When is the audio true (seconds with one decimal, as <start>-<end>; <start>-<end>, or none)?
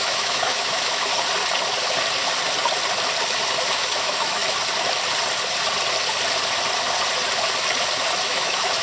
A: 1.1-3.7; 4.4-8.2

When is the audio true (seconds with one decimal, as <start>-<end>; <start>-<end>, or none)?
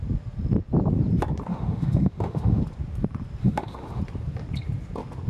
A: 0.0-1.5; 2.6-3.4; 4.0-5.3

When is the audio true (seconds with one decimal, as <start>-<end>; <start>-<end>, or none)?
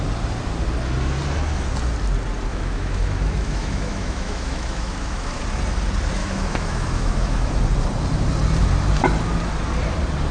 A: 0.0-2.5; 5.4-6.2; 7.5-10.3